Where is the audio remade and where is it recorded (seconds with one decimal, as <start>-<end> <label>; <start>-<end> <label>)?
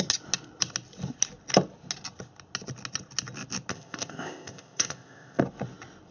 0.0-3.7 recorded; 3.7-5.4 remade; 5.4-6.1 recorded